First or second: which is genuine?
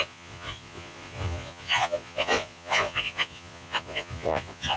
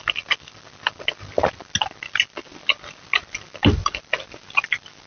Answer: second